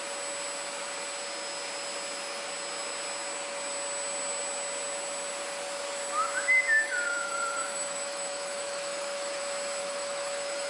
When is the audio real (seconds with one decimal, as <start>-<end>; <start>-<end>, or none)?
0.0-6.8; 9.4-9.8